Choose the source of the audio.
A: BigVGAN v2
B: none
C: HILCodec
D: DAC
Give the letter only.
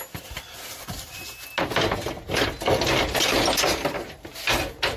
B